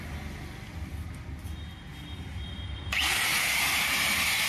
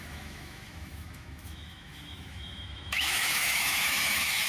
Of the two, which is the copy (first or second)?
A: second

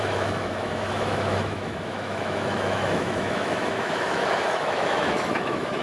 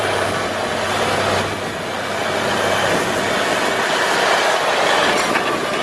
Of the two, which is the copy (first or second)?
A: first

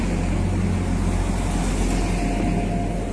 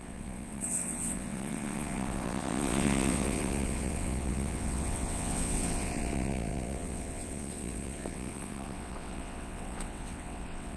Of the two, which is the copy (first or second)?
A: second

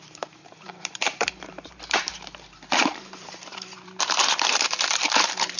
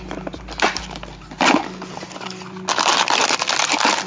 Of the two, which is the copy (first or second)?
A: first